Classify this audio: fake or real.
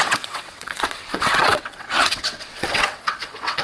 fake